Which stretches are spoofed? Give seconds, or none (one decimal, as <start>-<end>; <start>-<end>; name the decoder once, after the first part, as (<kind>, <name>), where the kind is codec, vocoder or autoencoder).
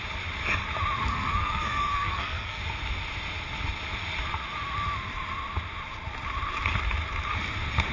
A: 1.1-2.6 (codec, SNAC)